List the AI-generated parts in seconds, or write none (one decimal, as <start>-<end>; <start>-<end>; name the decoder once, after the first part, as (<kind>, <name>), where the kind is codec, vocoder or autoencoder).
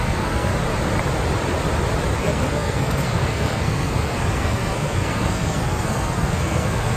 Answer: 0.0-0.5 (codec, SNAC); 2.2-7.0